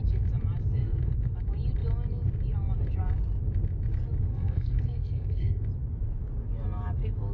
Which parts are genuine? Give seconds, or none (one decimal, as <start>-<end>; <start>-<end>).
0.0-0.8; 1.3-4.3; 5.6-7.3